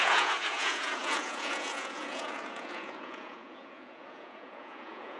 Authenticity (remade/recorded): remade